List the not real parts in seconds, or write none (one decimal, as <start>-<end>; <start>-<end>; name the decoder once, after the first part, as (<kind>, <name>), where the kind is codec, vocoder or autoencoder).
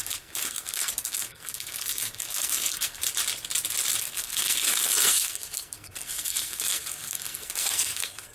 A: 0.0-3.0 (codec, SNAC); 4.0-8.3